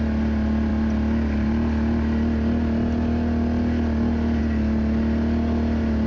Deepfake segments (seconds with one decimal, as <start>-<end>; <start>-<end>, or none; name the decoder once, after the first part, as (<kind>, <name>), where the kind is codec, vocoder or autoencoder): none